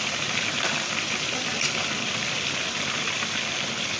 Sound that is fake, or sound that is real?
real